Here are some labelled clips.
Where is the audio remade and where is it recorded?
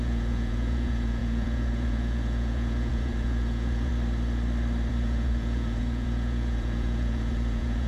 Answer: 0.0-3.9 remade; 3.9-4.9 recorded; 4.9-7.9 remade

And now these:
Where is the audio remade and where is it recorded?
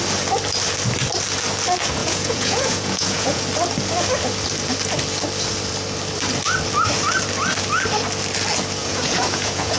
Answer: 0.0-2.0 recorded; 2.0-3.4 remade; 3.4-8.8 recorded; 8.8-9.8 remade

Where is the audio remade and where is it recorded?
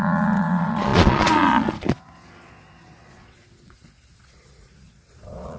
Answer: 0.0-5.6 remade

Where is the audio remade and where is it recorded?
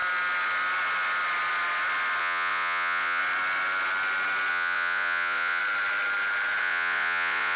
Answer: 0.0-2.2 recorded; 2.2-3.2 remade; 3.2-4.5 recorded; 4.5-5.6 remade; 5.6-6.6 recorded; 6.6-7.6 remade